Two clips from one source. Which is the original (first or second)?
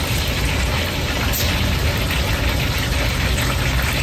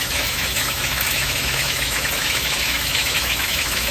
first